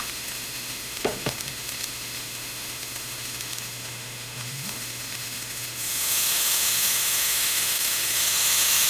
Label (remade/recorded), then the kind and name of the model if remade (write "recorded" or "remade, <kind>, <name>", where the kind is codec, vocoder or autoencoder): remade, autoencoder, DAC-VAE